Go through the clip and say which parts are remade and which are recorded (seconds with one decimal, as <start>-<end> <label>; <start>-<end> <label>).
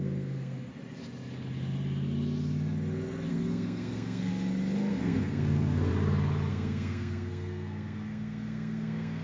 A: 0.0-0.7 remade; 0.7-3.3 recorded; 3.3-4.3 remade; 4.3-4.9 recorded; 4.9-5.9 remade; 5.9-6.5 recorded; 6.5-9.2 remade